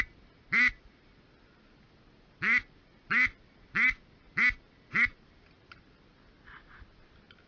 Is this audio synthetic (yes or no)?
no